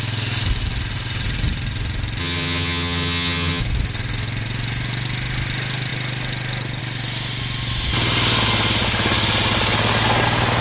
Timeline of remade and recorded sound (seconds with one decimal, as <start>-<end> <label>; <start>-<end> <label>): 0.0-2.2 recorded; 2.2-3.6 remade; 3.6-10.6 recorded